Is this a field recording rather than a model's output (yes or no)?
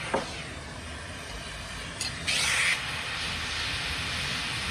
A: yes